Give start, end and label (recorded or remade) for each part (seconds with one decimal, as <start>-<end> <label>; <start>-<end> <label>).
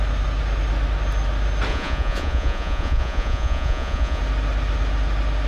0.0-1.7 recorded; 1.7-4.2 remade; 4.2-5.5 recorded